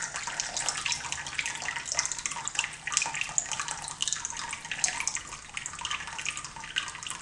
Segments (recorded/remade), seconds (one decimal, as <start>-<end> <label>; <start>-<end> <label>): 0.0-7.2 recorded